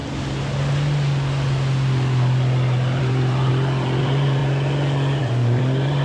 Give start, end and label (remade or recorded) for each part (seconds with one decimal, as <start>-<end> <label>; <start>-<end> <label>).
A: 0.0-3.0 recorded; 3.0-3.5 remade; 3.5-4.0 recorded; 4.0-4.4 remade; 4.4-5.2 recorded; 5.2-6.0 remade